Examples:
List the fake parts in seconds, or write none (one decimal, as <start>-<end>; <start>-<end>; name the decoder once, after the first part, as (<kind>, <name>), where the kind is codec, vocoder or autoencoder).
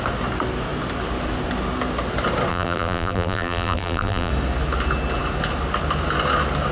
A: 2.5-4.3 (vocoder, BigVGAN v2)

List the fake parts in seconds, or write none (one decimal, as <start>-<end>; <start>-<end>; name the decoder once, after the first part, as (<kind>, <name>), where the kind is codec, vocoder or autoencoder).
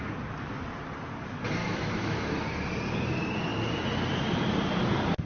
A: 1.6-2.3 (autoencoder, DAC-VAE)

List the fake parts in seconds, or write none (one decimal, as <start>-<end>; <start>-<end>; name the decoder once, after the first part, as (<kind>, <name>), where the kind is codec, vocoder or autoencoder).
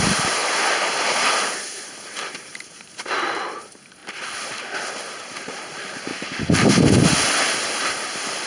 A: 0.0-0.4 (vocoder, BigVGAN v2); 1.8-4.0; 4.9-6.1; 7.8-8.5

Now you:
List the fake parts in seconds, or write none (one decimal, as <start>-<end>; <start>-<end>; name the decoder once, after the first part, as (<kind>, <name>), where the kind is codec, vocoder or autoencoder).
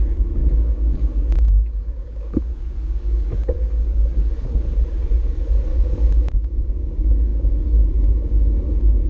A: 0.4-4.6 (codec, DAC); 5.7-6.7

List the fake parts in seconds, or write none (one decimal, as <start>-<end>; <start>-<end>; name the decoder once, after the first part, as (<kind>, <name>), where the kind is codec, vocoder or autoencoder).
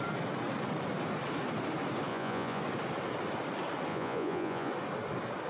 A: 2.1-2.6 (vocoder, Vocos); 3.9-4.7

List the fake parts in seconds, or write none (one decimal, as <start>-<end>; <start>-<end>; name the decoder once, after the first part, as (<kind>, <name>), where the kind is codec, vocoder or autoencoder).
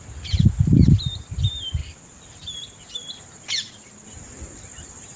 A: none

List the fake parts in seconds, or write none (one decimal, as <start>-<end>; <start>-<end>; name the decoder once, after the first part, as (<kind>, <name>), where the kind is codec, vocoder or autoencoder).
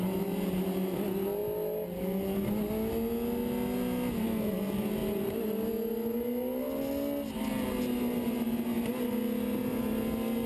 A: none